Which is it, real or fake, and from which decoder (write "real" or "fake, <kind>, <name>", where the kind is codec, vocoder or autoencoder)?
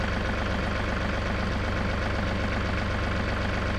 real